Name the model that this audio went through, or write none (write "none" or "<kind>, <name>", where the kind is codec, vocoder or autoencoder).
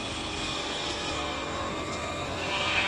codec, SNAC